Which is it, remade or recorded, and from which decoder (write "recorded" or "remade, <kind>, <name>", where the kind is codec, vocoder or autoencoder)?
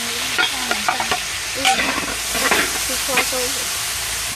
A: recorded